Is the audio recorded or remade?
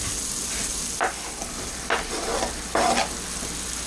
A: recorded